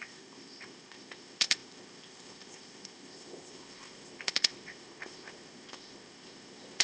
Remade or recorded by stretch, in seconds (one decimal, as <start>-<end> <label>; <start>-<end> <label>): 0.0-6.8 remade